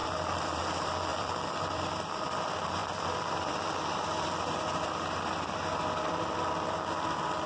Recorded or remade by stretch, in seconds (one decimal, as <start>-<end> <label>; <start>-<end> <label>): 0.0-0.6 remade; 0.6-1.1 recorded; 1.1-2.1 remade; 2.1-2.8 recorded; 2.8-7.5 remade

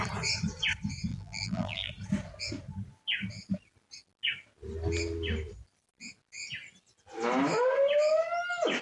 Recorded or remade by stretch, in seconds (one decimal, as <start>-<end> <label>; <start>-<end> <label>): 0.0-1.1 recorded; 1.1-1.9 remade; 1.9-8.8 recorded